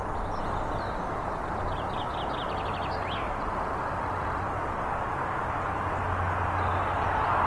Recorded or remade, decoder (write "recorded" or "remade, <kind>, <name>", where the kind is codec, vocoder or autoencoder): recorded